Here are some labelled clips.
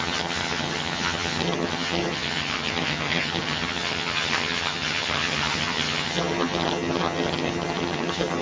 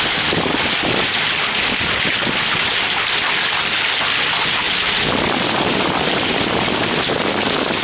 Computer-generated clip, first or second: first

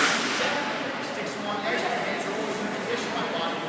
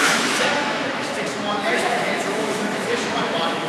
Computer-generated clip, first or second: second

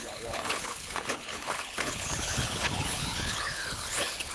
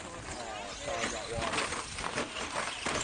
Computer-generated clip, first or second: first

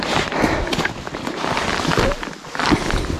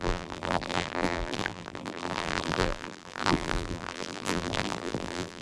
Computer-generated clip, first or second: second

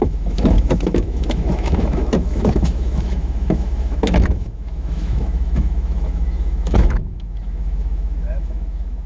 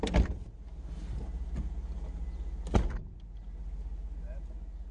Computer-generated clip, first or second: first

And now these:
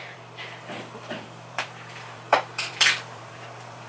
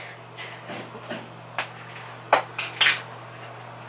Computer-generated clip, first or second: first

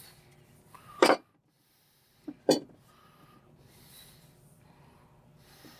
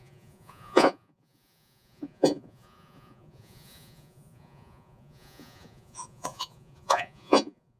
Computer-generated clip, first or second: second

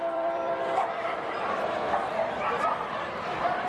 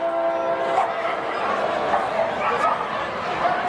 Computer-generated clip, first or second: first